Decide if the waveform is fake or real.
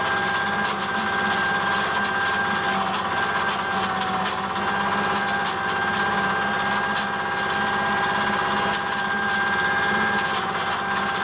real